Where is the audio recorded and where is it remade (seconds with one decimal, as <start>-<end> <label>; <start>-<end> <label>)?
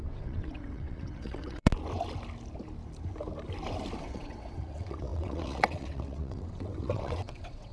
0.0-1.7 remade; 1.7-4.0 recorded; 4.0-7.7 remade